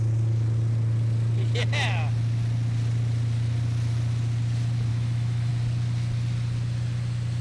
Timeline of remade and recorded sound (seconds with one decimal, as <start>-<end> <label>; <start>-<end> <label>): 0.0-4.9 recorded; 4.9-5.5 remade; 5.5-7.4 recorded